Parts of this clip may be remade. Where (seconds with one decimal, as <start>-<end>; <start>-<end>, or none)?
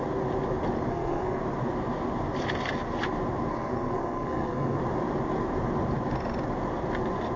0.9-1.4; 3.5-4.8